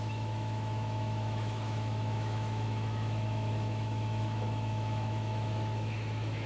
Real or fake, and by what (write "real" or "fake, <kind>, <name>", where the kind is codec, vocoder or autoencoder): fake, autoencoder, DAC-VAE